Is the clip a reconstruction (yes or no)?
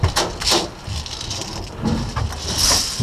no